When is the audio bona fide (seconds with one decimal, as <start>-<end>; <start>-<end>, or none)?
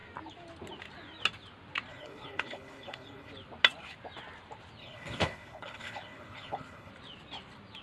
0.0-1.9; 3.3-4.8; 6.9-7.8